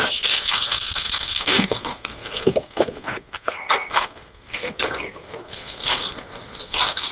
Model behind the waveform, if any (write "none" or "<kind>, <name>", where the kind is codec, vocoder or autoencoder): codec, SNAC